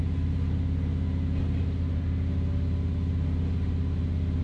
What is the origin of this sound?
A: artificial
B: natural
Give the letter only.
B